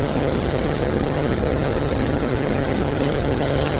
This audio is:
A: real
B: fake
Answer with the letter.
B